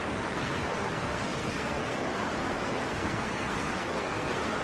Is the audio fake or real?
fake